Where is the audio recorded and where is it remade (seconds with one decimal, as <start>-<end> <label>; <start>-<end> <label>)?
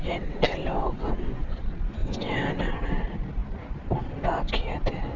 0.0-1.6 remade; 1.6-2.0 recorded; 2.0-2.7 remade; 2.7-5.2 recorded